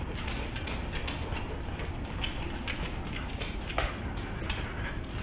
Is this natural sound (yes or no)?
yes